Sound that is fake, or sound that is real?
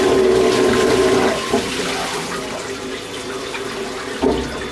real